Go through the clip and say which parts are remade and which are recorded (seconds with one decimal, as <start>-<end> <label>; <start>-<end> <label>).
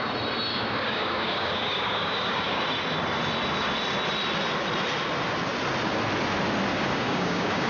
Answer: 0.0-0.5 recorded; 0.5-2.6 remade; 2.6-6.7 recorded; 6.7-7.7 remade